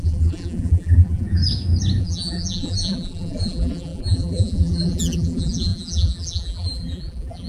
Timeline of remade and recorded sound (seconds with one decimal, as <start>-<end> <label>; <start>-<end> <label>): 0.0-1.4 remade; 1.4-2.0 recorded; 2.0-7.5 remade